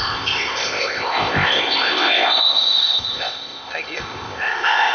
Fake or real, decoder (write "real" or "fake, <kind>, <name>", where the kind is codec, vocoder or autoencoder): fake, codec, ZipCodec